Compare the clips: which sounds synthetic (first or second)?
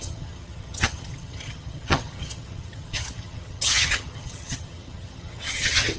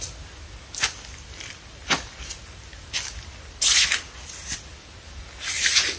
first